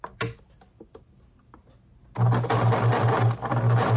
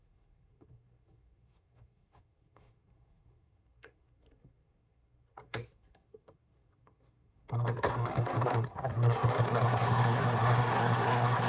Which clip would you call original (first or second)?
first